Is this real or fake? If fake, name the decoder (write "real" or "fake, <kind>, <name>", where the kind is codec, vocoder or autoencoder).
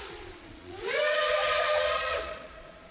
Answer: fake, vocoder, Vocos